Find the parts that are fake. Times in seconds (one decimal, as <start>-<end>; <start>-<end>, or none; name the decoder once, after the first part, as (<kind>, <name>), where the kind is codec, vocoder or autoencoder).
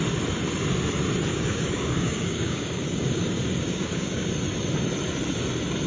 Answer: 1.3-4.3 (codec, DAC)